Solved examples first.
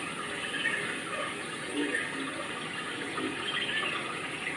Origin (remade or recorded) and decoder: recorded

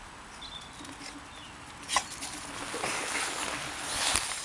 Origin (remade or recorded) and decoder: recorded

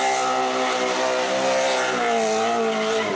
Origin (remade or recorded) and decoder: recorded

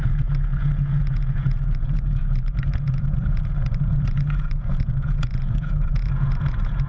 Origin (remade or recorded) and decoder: remade, vocoder, Vocos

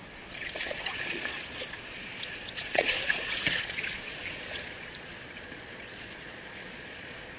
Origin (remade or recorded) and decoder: remade, vocoder, Vocos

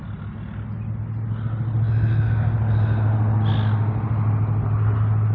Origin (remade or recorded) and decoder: recorded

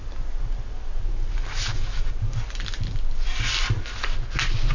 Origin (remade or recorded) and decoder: recorded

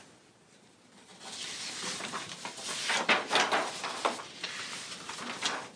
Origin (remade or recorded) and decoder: recorded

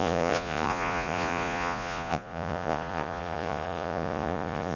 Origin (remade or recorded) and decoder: remade, vocoder, Vocos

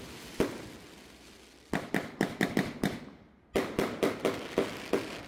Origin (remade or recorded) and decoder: recorded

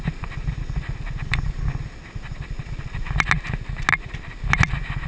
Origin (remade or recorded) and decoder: recorded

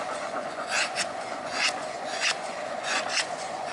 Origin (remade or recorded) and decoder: remade, vocoder, Vocos